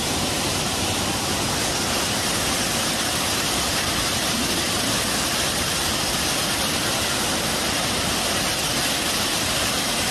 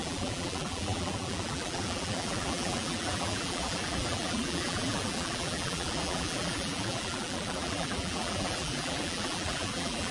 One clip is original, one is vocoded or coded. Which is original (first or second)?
first